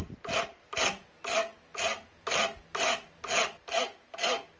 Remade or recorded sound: recorded